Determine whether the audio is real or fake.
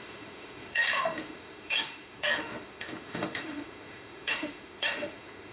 fake